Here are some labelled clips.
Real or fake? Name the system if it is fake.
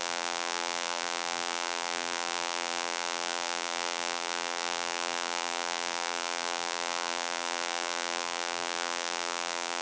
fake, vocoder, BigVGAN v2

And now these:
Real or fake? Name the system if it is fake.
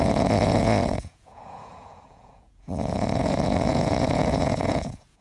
fake, vocoder, Vocos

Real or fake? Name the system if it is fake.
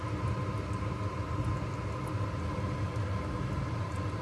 real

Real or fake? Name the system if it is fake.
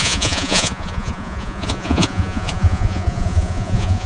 fake, vocoder, Vocos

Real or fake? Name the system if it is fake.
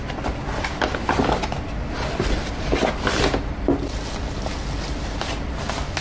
real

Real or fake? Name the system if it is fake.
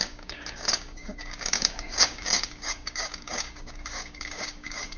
fake, codec, DAC